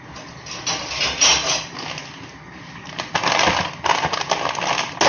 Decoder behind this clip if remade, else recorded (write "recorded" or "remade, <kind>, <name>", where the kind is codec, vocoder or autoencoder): recorded